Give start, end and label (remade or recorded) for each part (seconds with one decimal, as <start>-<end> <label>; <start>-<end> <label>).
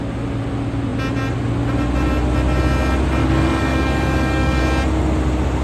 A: 0.0-3.2 recorded; 3.2-4.6 remade; 4.6-5.6 recorded